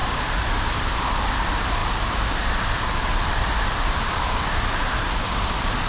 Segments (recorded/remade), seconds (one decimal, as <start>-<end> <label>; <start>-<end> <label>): 0.0-0.9 remade; 0.9-1.8 recorded; 1.8-5.1 remade; 5.1-5.9 recorded